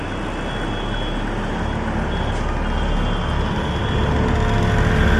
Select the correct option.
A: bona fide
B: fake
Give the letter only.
A